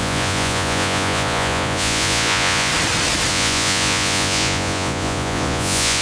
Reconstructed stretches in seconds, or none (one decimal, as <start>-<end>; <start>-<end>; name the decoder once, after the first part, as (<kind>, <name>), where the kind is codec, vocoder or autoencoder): 0.0-2.7 (vocoder, Vocos); 3.3-6.0